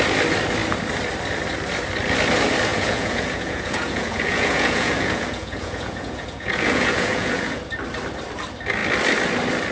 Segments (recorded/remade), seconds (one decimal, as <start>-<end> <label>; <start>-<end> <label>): 0.0-2.7 recorded; 2.7-7.6 remade; 7.6-9.7 recorded